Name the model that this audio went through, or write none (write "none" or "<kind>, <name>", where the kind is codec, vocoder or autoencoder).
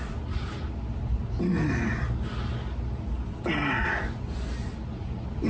none